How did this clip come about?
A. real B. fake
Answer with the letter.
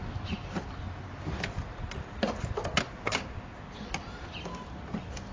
A